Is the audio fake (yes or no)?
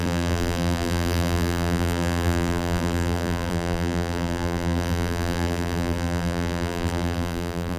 yes